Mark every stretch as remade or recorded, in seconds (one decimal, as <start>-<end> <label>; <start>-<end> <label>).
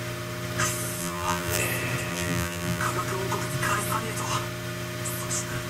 0.0-1.0 recorded; 1.0-1.6 remade; 1.6-2.1 recorded; 2.1-2.8 remade; 2.8-5.7 recorded